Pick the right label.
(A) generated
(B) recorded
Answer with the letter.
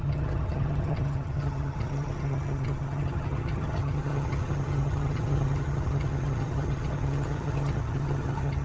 A